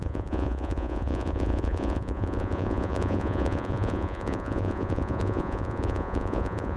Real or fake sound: fake